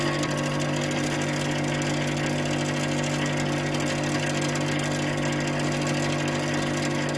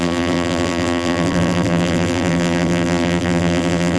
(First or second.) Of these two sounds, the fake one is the second